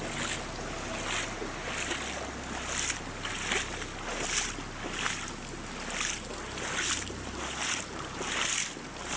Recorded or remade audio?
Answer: recorded